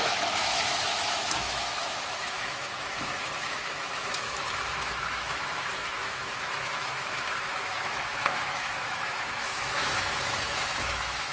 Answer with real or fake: fake